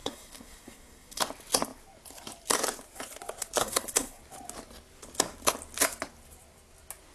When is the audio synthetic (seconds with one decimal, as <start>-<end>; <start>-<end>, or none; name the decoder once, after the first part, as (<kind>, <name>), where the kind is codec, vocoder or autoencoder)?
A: 0.0-1.2 (codec, SNAC); 3.6-4.2